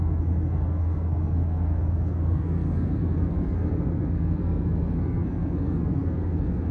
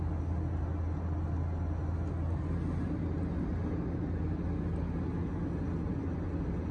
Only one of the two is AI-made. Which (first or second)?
first